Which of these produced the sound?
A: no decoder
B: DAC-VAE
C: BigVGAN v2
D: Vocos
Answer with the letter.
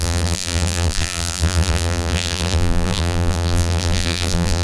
C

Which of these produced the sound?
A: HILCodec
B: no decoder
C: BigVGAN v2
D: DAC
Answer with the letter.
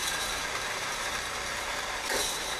C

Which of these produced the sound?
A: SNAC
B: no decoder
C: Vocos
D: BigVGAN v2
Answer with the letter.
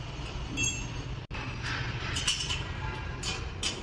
B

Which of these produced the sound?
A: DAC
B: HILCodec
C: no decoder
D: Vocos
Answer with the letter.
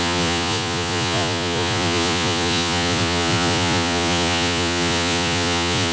D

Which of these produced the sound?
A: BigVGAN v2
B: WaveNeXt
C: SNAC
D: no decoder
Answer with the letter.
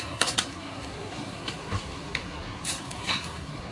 C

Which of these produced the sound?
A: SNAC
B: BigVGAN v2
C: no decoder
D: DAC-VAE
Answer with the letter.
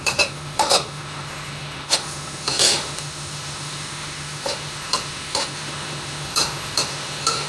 D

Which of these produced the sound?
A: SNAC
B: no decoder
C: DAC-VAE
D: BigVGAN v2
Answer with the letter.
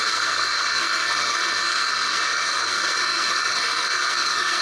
A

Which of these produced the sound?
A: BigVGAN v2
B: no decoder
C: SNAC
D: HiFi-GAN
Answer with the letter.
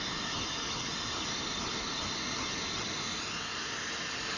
B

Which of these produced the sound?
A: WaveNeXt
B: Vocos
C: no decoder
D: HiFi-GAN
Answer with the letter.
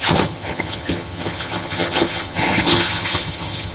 D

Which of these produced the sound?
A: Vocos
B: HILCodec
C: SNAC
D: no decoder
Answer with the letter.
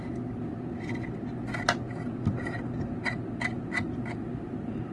D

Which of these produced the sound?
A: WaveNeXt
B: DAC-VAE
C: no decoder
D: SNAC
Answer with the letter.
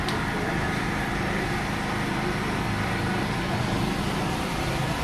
C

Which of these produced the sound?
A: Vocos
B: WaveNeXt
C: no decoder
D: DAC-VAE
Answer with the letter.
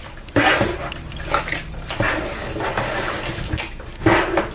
C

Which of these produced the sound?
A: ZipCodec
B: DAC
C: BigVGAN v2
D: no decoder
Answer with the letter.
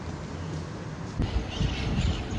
C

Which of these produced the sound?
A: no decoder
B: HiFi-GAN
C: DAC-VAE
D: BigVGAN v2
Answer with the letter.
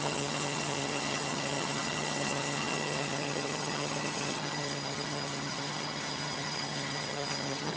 B